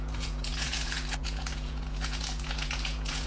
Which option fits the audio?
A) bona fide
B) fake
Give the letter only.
B